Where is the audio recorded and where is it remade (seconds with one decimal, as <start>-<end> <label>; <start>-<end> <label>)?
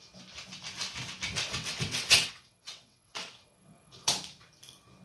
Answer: 0.0-1.5 recorded; 1.5-4.1 remade; 4.1-5.0 recorded